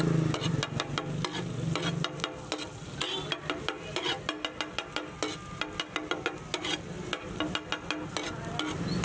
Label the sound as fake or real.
real